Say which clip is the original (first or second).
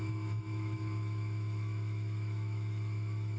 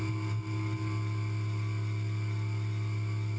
second